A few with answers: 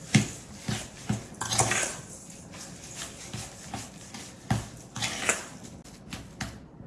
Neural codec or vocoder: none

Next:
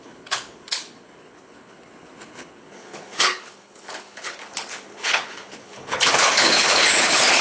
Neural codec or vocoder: codec, HILCodec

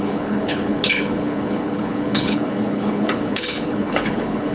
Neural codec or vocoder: codec, HILCodec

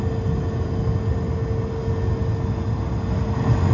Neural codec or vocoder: none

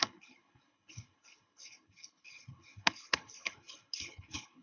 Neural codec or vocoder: codec, HILCodec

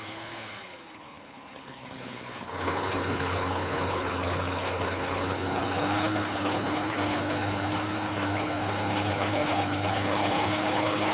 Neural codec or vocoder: codec, HILCodec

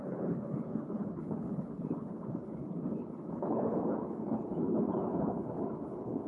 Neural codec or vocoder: codec, HILCodec